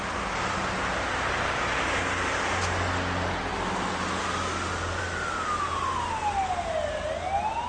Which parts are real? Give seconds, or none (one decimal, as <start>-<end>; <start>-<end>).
0.0-7.7